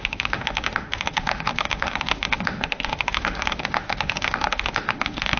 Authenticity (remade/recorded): remade